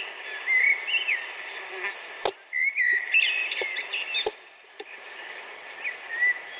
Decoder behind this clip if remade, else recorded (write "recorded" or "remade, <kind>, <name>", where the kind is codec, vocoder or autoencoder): recorded